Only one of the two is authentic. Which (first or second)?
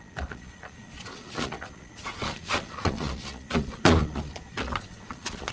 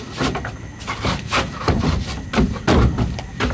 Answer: second